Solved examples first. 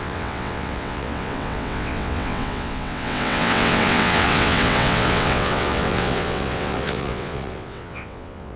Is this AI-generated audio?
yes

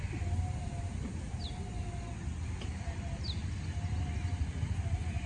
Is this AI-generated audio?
no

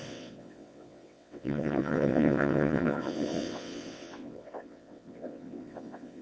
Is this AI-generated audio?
yes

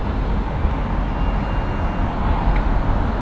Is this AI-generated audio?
no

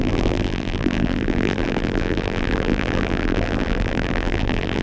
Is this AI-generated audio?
yes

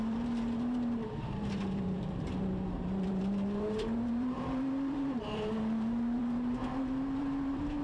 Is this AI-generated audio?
yes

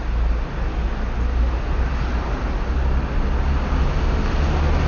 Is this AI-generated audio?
no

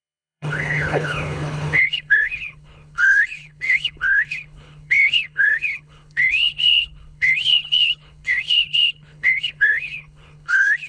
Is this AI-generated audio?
yes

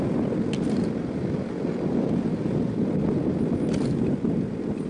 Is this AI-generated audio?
no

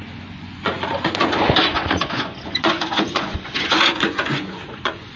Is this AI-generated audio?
yes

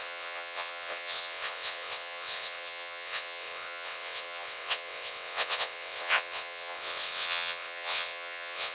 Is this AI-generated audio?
yes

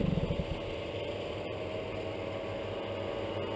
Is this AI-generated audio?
no